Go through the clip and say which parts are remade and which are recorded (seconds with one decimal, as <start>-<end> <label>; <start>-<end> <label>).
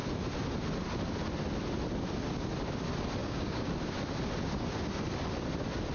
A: 0.0-3.2 recorded; 3.2-3.7 remade; 3.7-5.9 recorded